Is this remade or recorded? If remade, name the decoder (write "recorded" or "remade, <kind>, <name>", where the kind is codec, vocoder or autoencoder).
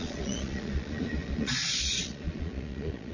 remade, vocoder, Vocos